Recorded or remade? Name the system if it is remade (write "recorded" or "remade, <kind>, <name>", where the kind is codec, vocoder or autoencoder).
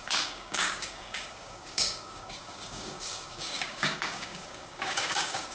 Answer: remade, codec, DAC